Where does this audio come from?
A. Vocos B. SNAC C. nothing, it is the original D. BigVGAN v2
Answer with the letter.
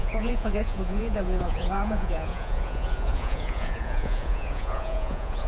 A